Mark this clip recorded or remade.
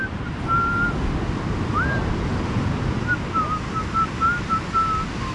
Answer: recorded